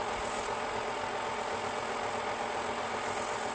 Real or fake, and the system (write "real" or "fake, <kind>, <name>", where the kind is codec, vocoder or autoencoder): real